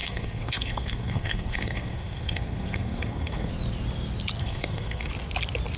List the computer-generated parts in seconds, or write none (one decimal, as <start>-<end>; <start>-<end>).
0.0-3.5; 4.4-5.1